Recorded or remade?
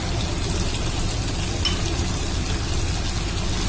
recorded